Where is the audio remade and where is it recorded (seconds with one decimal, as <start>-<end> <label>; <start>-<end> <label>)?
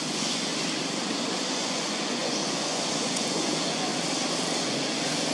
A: 0.0-0.5 remade; 0.5-1.5 recorded; 1.5-3.9 remade; 3.9-4.6 recorded; 4.6-5.3 remade